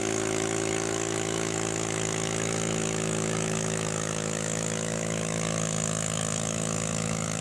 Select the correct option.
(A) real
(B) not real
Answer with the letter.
B